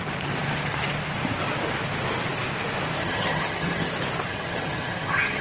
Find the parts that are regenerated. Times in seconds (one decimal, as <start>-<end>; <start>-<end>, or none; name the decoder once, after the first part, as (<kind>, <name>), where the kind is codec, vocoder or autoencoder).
3.0-3.9 (vocoder, HiFi-GAN); 4.3-5.4